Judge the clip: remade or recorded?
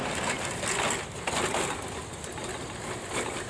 recorded